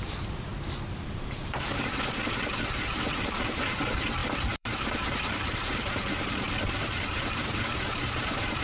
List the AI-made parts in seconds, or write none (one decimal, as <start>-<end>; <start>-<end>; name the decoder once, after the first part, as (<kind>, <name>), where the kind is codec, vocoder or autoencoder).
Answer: 0.0-0.5 (vocoder, BigVGAN v2); 2.9-8.6